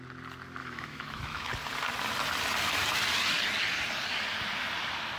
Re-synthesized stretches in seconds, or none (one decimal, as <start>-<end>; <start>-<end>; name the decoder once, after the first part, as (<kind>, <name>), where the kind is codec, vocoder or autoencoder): 0.6-1.5 (autoencoder, DAC-VAE)